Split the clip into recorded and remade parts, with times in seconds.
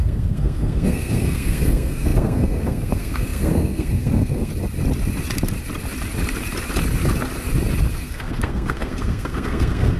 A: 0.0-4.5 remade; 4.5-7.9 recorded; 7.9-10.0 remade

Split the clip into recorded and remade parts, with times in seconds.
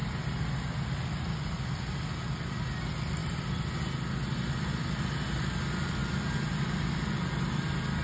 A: 0.0-8.0 recorded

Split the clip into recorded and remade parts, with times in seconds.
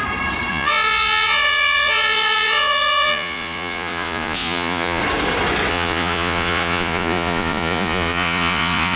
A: 0.0-0.5 recorded; 0.5-5.0 remade; 5.0-5.7 recorded; 5.7-9.0 remade